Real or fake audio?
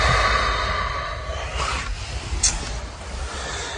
real